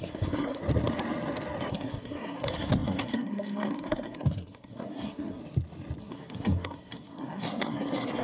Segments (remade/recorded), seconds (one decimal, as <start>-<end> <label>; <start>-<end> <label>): 0.0-0.6 remade; 0.6-1.7 recorded; 1.7-5.4 remade; 5.4-6.0 recorded; 6.0-8.2 remade